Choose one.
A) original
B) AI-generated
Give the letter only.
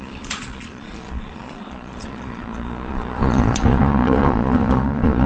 B